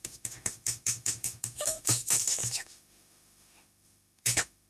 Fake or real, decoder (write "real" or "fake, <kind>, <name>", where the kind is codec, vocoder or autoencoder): fake, autoencoder, DAC-VAE